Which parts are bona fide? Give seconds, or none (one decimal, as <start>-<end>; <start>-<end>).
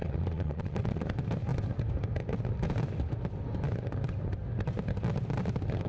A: 1.0-5.9